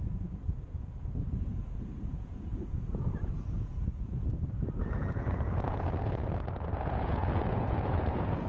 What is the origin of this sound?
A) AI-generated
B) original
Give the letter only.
A